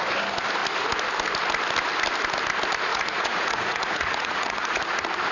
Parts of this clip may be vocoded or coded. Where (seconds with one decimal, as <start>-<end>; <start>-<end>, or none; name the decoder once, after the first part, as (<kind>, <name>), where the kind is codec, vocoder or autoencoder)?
2.9-4.8 (vocoder, Vocos)